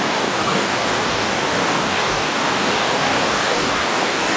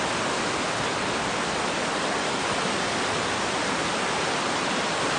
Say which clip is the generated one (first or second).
first